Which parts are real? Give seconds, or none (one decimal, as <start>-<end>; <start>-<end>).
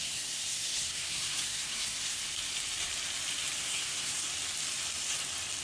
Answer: 2.2-3.6; 4.3-5.6